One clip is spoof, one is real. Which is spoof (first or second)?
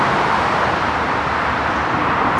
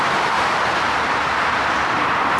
second